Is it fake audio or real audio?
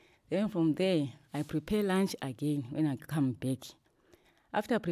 real